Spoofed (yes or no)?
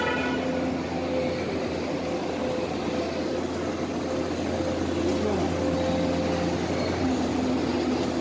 no